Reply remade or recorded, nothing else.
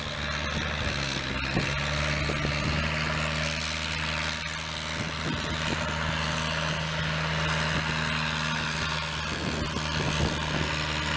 recorded